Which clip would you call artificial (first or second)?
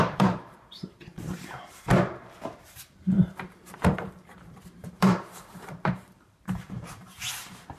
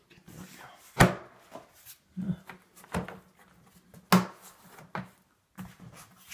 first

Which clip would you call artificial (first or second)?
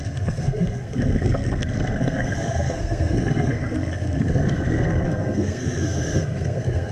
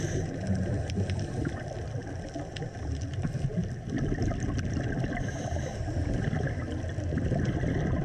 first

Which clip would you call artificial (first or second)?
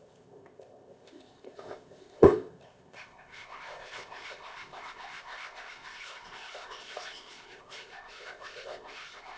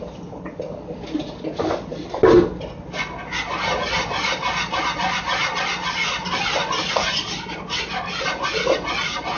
first